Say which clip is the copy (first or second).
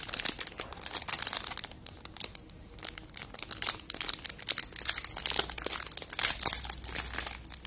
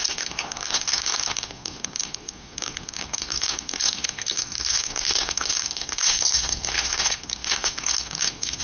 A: second